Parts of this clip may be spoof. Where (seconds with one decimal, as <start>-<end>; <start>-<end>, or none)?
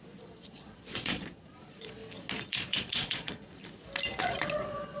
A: 0.0-2.0; 2.5-3.6; 4.2-5.0